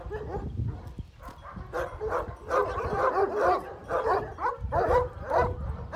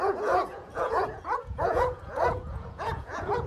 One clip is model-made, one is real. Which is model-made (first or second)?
second